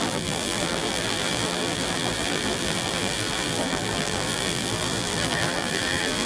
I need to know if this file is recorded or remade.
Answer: remade